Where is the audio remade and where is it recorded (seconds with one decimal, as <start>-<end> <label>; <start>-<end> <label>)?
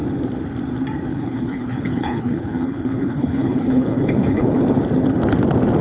0.0-1.1 recorded; 1.1-4.6 remade; 4.6-5.8 recorded